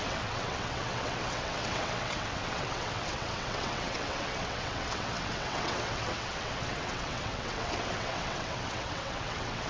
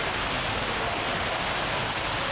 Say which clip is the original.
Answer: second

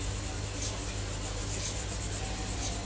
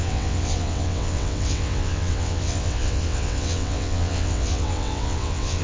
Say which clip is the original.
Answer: first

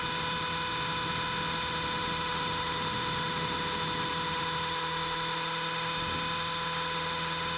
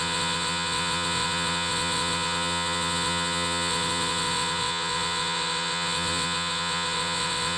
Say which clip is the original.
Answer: first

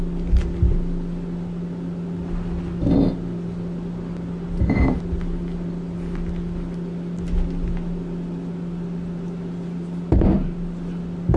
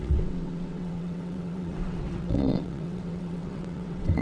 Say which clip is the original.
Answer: first